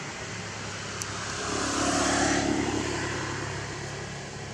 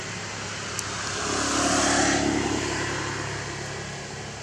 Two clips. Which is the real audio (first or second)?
second